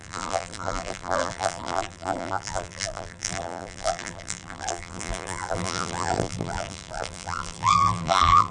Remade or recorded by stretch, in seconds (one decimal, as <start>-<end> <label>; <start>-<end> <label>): 0.0-8.5 remade